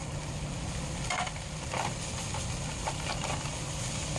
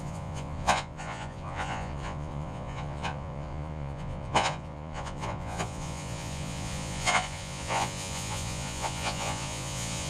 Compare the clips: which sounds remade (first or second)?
second